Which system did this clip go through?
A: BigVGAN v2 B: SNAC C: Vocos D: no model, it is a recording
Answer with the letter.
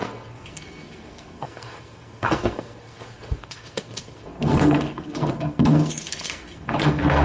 B